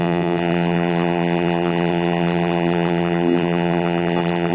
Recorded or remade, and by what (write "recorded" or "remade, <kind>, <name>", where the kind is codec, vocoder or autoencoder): remade, vocoder, BigVGAN v2